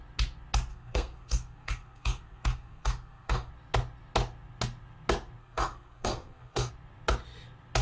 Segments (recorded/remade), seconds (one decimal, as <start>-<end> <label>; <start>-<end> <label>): 0.0-0.7 recorded; 0.7-3.5 remade; 3.5-5.4 recorded; 5.4-6.7 remade; 6.7-7.8 recorded